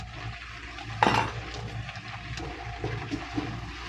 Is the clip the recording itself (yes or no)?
yes